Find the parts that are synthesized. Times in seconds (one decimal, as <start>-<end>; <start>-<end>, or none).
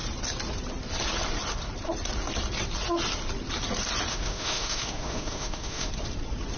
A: 4.1-5.9